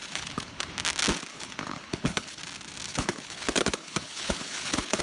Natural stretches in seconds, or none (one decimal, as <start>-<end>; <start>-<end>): 0.7-1.3; 2.4-2.9

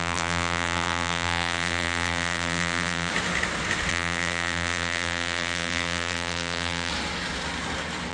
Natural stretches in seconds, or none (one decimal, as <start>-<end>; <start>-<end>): 3.1-3.9; 6.9-8.1